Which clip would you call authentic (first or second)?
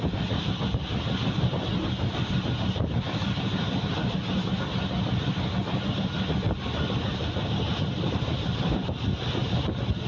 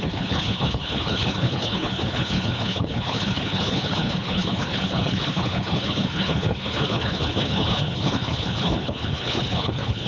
first